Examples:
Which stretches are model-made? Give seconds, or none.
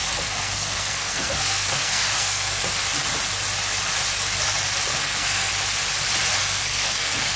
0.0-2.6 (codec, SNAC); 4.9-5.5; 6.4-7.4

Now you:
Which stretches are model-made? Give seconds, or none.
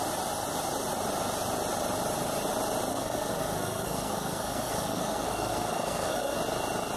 2.9-6.4 (codec, SNAC)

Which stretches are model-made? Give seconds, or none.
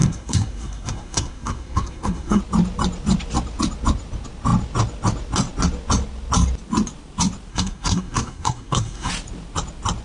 0.0-2.4 (codec, SNAC); 7.5-9.1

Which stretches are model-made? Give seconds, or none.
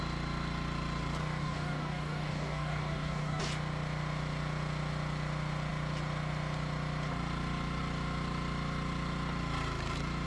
1.4-3.4 (codec, DAC)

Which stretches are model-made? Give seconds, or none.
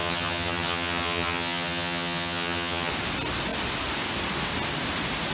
0.0-2.9 (vocoder, HiFi-GAN)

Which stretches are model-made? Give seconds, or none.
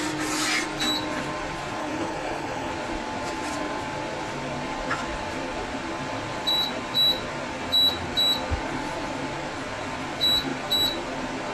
1.8-2.7 (codec, HILCodec)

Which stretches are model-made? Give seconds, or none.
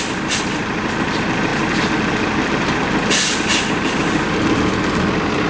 none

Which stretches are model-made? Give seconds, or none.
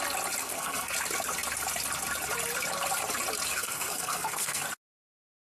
0.4-0.9 (codec, SNAC); 3.5-4.6